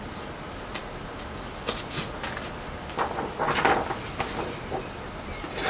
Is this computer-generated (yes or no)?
no